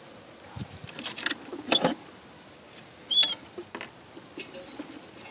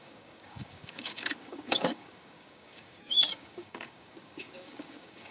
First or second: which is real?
first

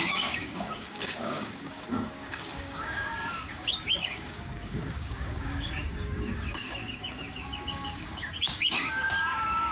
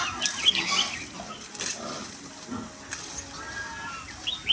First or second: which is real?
second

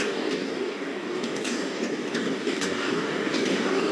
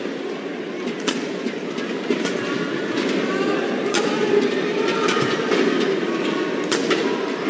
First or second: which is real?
second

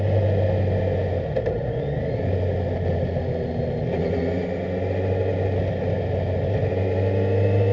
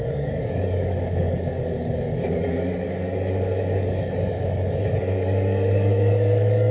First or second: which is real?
first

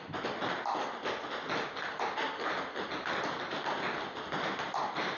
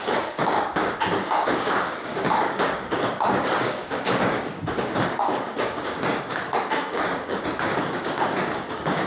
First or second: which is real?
first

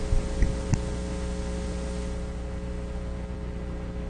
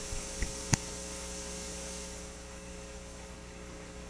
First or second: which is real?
first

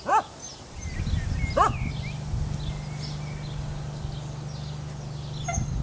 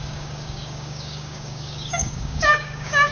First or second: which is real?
first